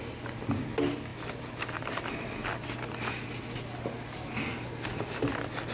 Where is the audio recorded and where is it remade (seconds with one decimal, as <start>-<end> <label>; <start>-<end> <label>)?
0.0-5.7 recorded